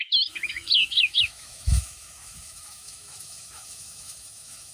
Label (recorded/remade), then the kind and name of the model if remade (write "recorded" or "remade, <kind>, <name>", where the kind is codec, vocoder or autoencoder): remade, autoencoder, DAC-VAE